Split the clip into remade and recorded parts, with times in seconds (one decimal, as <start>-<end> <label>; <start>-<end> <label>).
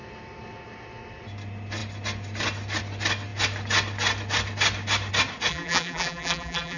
0.0-5.5 recorded; 5.5-6.8 remade